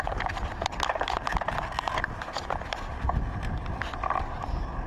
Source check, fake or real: real